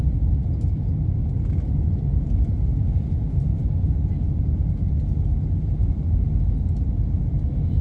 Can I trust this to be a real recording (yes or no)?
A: yes